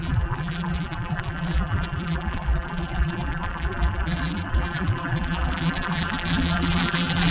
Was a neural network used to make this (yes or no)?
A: yes